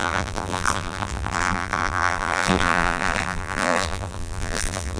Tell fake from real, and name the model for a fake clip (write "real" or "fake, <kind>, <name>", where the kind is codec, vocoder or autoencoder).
fake, vocoder, BigVGAN v2